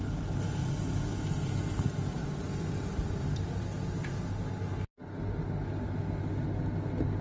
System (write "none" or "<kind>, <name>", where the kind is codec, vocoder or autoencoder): none